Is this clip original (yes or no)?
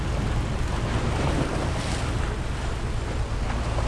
yes